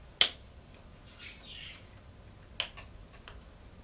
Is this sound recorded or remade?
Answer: recorded